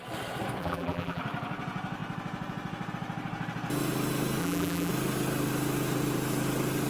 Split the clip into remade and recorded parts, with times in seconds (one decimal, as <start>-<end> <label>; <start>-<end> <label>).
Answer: 0.0-0.6 recorded; 0.6-1.2 remade; 1.2-4.4 recorded; 4.4-4.9 remade; 4.9-6.9 recorded